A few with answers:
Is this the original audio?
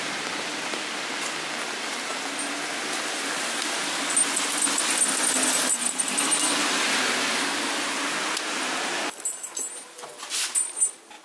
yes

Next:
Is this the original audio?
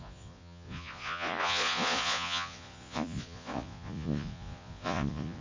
no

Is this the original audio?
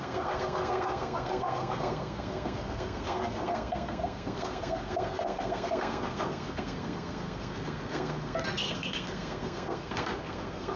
no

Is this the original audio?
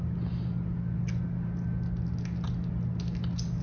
yes